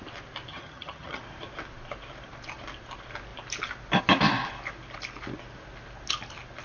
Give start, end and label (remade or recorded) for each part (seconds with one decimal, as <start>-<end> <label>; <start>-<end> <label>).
0.0-0.5 recorded; 0.5-1.2 remade; 1.2-6.6 recorded